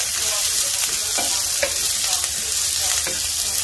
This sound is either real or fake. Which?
real